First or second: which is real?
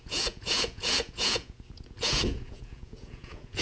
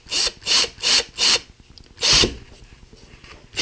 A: second